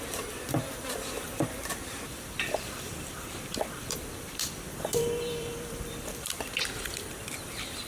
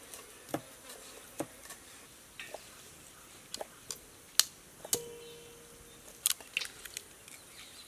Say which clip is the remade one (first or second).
first